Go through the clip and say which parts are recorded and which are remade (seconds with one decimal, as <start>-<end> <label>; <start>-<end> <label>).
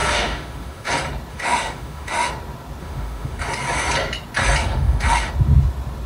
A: 0.0-0.9 remade; 0.9-1.3 recorded; 1.3-2.3 remade; 2.3-2.8 recorded; 2.8-3.4 remade; 3.4-4.6 recorded; 4.6-5.3 remade; 5.3-6.1 recorded